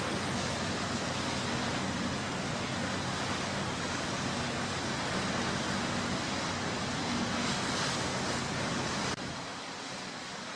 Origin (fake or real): real